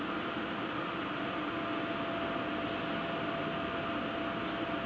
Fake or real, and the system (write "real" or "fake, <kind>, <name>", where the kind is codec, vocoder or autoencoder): real